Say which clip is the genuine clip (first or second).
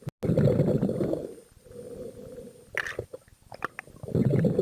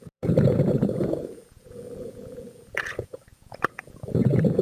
first